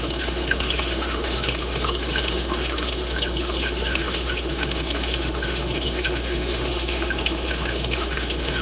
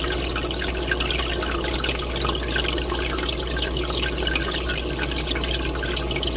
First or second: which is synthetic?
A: first